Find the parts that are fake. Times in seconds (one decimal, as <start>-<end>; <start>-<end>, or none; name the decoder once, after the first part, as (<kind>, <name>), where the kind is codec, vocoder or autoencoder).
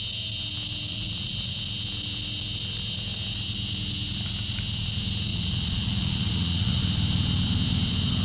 0.9-1.5 (vocoder, Vocos); 5.3-6.8